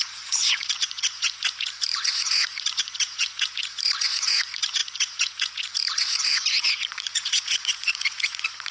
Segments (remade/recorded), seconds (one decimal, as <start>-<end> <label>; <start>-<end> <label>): 0.0-8.7 remade